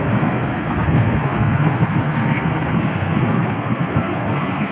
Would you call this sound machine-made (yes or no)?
yes